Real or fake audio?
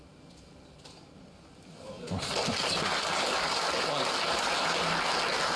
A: real